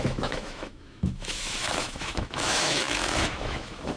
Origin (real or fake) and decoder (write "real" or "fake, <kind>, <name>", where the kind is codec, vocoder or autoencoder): fake, autoencoder, DAC-VAE